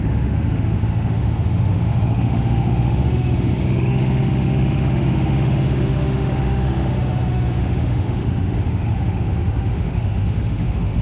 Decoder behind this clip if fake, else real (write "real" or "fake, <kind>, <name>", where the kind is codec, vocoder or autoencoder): fake, autoencoder, DAC-VAE